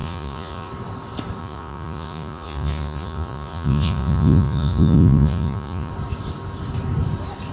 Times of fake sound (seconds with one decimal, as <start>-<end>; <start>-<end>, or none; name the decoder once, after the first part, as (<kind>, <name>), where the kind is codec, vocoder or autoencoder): 0.0-0.7 (vocoder, Vocos); 1.4-5.9